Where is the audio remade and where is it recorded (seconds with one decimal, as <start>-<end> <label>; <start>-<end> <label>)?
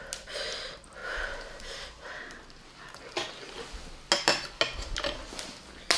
0.0-1.0 recorded; 1.0-1.6 remade; 1.6-6.0 recorded